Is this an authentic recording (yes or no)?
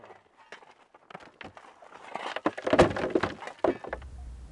yes